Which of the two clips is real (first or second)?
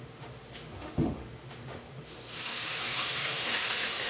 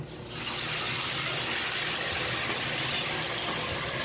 second